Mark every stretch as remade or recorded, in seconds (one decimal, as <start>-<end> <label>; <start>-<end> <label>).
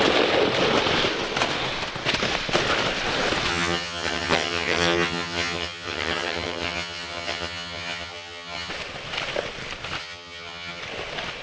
0.0-3.5 recorded; 3.5-8.7 remade; 8.7-10.0 recorded; 10.0-10.8 remade; 10.8-11.4 recorded